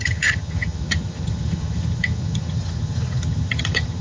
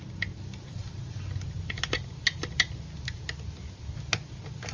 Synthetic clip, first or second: first